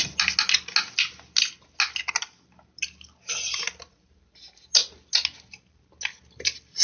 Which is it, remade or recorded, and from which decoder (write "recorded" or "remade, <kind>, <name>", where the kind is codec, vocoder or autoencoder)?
recorded